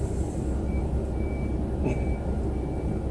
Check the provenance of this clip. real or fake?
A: real